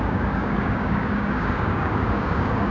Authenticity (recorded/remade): remade